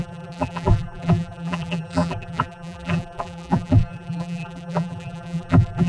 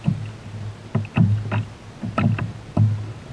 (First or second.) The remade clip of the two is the first